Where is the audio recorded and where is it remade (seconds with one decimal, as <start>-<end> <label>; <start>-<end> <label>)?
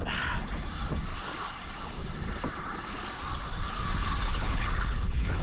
0.0-4.3 recorded; 4.3-5.4 remade